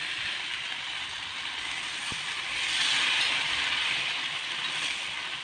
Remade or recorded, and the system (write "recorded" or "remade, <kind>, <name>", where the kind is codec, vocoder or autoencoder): recorded